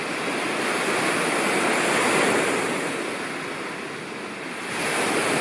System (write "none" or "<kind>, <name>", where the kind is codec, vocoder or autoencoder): none